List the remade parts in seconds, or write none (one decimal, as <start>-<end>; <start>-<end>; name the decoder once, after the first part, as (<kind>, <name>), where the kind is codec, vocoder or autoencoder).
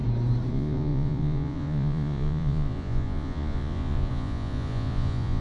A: 0.5-5.4 (vocoder, Vocos)